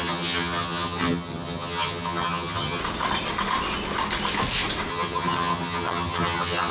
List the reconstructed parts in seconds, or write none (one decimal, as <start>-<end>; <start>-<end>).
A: 0.0-2.8; 4.9-6.7